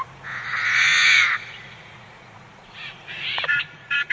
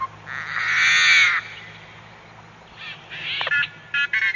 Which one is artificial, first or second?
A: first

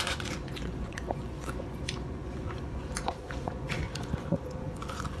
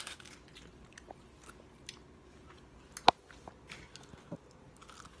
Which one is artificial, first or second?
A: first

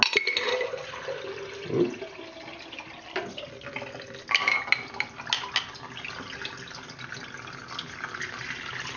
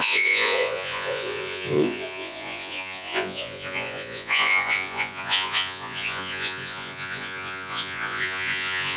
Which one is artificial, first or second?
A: second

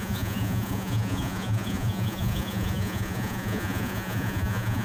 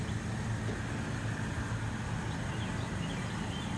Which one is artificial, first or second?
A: first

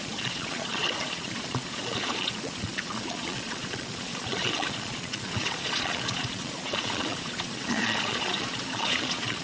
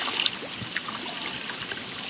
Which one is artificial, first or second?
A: first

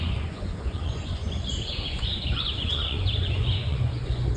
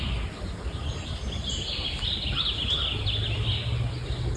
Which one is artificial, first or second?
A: first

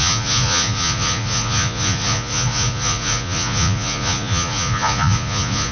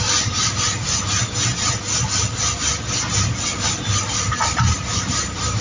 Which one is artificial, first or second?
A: first